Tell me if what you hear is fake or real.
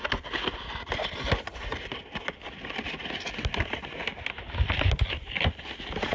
real